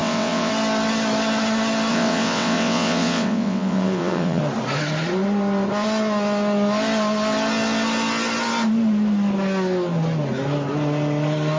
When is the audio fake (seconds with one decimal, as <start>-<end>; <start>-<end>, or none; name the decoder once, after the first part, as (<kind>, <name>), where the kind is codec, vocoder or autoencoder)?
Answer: 0.0-0.5 (vocoder, WaveNeXt); 1.9-4.4